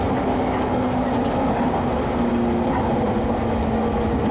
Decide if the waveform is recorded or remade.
recorded